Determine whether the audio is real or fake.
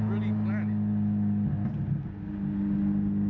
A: real